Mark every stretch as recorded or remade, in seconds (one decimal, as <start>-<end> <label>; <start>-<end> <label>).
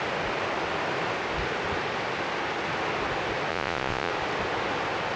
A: 0.0-3.5 recorded; 3.5-4.1 remade; 4.1-5.2 recorded